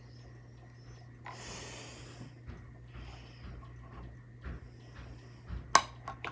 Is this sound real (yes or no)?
yes